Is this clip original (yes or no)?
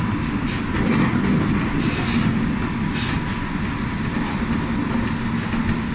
yes